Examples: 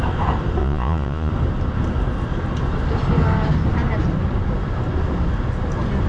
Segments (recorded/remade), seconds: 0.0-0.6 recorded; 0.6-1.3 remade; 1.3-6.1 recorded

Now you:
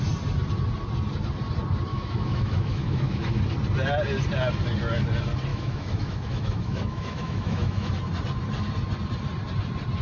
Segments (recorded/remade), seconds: 0.0-1.9 recorded; 1.9-3.4 remade; 3.4-5.5 recorded; 5.5-8.0 remade; 8.0-10.0 recorded

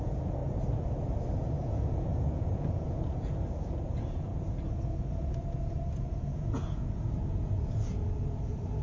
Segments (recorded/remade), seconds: 0.0-0.4 remade; 0.4-1.5 recorded; 1.5-8.8 remade

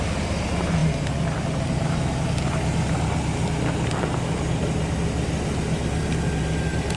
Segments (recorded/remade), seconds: 0.0-7.0 recorded

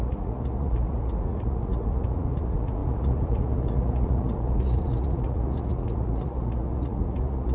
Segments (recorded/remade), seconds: 0.0-7.5 remade

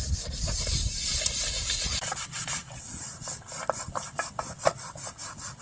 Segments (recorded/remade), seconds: 0.0-5.6 recorded

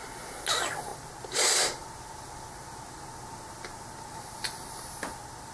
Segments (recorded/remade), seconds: 0.0-5.5 recorded

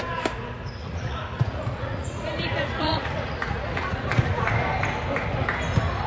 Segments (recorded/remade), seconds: 0.0-0.8 recorded; 0.8-4.5 remade; 4.5-6.1 recorded